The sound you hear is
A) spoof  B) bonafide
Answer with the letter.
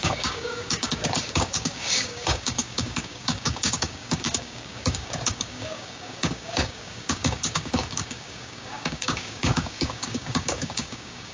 A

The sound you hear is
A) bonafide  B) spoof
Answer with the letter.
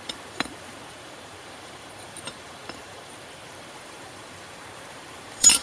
B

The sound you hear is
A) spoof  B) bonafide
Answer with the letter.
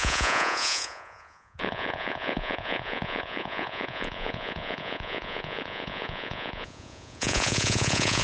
A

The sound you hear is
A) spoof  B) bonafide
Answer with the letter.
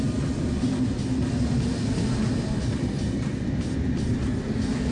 B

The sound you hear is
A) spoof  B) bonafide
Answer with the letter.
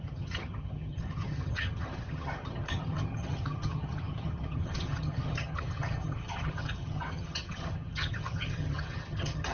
A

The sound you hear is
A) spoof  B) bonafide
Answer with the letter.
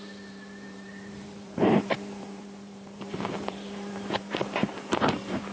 A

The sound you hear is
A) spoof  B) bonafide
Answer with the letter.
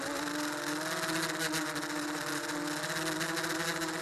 B